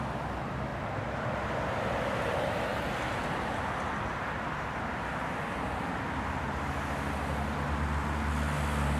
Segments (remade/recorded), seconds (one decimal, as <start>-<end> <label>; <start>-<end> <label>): 0.0-9.0 recorded